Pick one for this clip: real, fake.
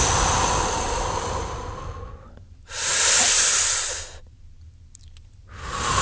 real